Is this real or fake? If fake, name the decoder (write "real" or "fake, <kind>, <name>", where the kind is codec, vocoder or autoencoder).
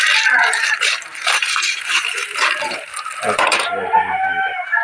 fake, vocoder, BigVGAN v2